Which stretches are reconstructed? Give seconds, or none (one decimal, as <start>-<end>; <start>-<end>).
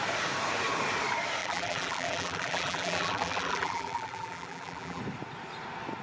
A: 1.4-5.0